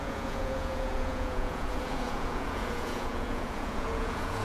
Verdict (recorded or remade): remade